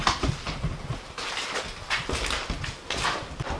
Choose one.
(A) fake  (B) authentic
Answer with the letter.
B